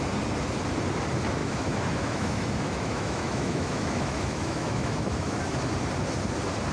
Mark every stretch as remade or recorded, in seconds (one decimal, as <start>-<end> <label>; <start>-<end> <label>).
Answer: 0.0-1.4 recorded; 1.4-5.4 remade; 5.4-6.7 recorded